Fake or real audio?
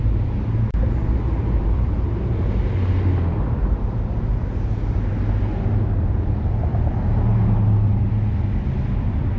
real